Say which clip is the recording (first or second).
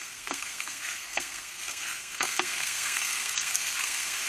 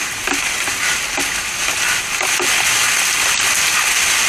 second